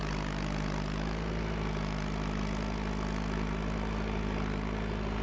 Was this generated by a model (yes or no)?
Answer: no